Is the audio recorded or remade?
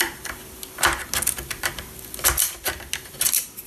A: recorded